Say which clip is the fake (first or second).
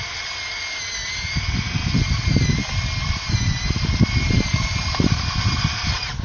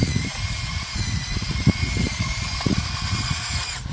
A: second